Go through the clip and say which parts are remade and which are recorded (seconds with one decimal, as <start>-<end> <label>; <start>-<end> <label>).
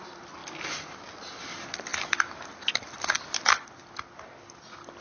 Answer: 0.0-5.0 recorded